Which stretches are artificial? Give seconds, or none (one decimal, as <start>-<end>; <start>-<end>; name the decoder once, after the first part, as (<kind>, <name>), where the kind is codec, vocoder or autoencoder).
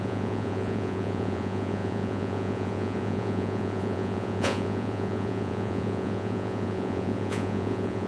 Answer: 0.0-8.1 (vocoder, Vocos)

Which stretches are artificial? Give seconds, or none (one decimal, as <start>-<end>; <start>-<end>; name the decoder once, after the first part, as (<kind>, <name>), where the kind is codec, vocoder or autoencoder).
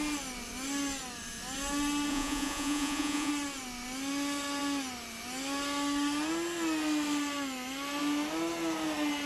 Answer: 2.1-3.3 (vocoder, Vocos)